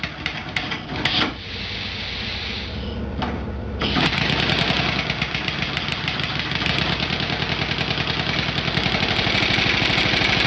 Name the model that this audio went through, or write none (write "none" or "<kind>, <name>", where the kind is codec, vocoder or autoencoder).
none